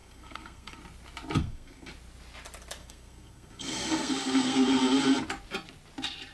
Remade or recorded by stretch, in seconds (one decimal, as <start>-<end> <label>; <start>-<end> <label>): 0.0-0.8 remade; 0.8-1.4 recorded; 1.4-1.9 remade; 1.9-2.8 recorded; 2.8-4.8 remade; 4.8-6.3 recorded

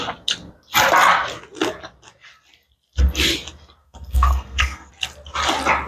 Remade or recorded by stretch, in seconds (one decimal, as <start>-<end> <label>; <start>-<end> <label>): 0.0-3.8 recorded; 3.8-4.9 remade; 4.9-5.9 recorded

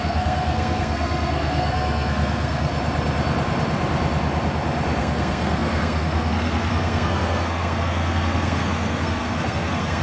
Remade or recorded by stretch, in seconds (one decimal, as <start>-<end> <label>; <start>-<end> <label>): 0.0-2.7 remade; 2.7-5.0 recorded; 5.0-10.0 remade

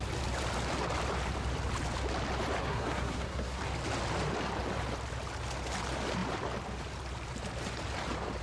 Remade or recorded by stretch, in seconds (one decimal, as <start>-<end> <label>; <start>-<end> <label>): 0.0-2.6 recorded; 2.6-3.6 remade; 3.6-8.4 recorded

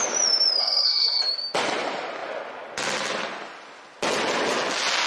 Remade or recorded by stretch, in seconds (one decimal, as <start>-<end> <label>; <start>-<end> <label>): 0.0-0.6 recorded; 0.6-1.2 remade; 1.2-5.1 recorded

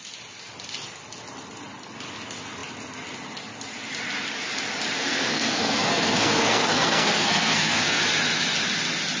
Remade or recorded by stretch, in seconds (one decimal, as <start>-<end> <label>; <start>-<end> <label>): 0.0-5.0 recorded; 5.0-8.0 remade; 8.0-9.2 recorded

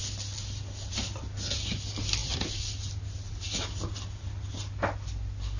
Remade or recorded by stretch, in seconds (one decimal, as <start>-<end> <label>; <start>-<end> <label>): 0.0-5.6 recorded